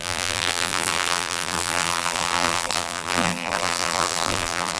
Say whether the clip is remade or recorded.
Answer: remade